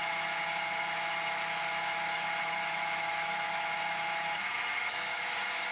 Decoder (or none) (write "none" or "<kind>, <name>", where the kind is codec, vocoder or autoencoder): autoencoder, DAC-VAE